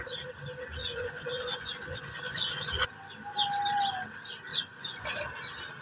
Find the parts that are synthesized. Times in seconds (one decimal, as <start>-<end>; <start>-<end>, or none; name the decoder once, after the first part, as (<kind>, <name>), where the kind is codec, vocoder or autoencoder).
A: 0.8-2.9 (vocoder, Vocos); 4.5-5.1